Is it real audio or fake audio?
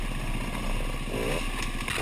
real